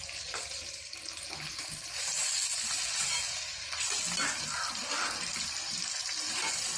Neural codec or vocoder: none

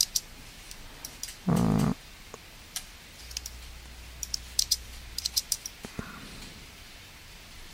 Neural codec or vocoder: vocoder, BigVGAN v2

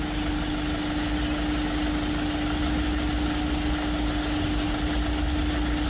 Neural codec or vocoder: none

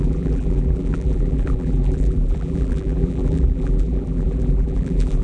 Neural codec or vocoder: vocoder, BigVGAN v2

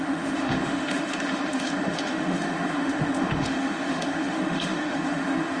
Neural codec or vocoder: autoencoder, DAC-VAE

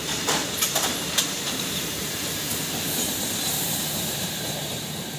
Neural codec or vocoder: vocoder, BigVGAN v2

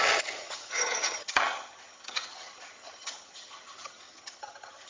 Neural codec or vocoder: vocoder, HiFi-GAN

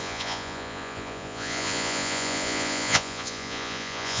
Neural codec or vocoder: vocoder, Vocos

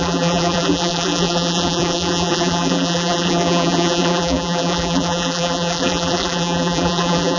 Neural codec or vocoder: vocoder, BigVGAN v2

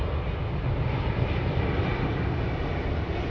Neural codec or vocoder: none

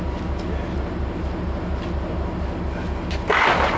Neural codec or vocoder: none